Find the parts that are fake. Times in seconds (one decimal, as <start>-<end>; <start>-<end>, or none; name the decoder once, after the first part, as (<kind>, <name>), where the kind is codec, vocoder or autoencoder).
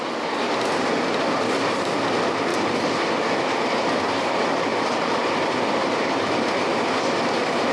2.5-3.9 (vocoder, BigVGAN v2); 4.7-6.5